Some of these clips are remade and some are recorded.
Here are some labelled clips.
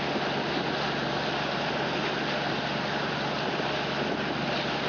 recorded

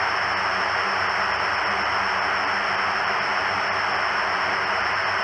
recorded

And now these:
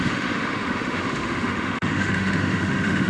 remade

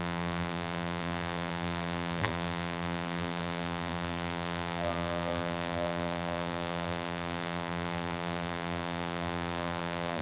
remade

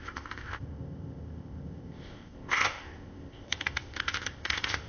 remade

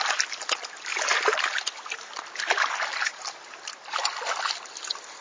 recorded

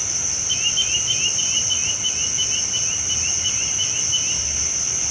recorded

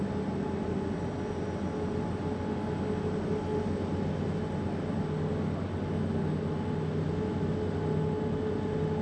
recorded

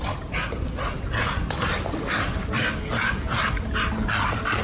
recorded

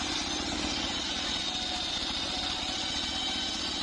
recorded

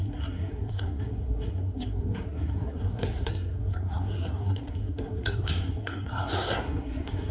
remade